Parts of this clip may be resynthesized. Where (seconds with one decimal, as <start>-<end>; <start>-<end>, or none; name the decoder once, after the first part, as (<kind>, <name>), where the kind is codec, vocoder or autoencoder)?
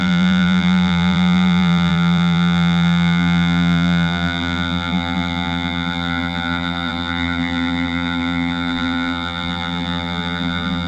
0.0-10.9 (vocoder, BigVGAN v2)